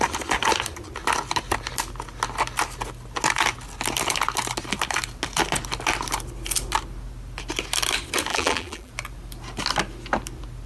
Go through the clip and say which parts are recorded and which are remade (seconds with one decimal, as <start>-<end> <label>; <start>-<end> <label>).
0.0-8.3 recorded; 8.3-8.9 remade; 8.9-10.7 recorded